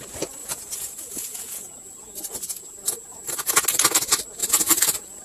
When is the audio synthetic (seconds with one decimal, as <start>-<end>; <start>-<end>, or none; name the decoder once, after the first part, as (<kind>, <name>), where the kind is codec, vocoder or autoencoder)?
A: 0.4-3.5 (vocoder, Vocos); 4.4-5.2